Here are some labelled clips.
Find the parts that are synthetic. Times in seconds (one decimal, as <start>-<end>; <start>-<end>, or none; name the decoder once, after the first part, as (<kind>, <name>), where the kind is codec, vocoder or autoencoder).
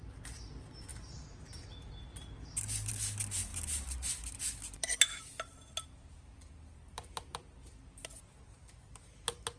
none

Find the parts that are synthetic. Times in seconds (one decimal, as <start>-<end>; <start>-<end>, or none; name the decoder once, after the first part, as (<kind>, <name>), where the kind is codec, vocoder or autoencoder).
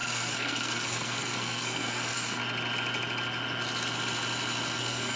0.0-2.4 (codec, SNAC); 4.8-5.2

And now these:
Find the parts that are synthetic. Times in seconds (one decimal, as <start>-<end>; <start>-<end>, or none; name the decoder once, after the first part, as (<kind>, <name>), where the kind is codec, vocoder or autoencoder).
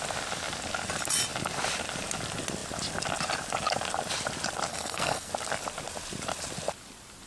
4.7-5.3 (codec, SNAC)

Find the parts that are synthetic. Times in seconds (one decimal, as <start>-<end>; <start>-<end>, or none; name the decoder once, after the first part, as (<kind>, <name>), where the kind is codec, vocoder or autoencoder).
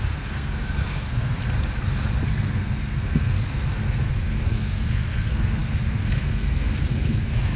0.0-1.4 (codec, SNAC); 2.3-7.6